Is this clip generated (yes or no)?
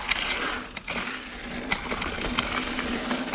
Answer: no